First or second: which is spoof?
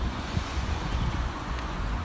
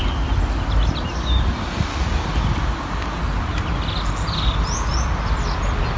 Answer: first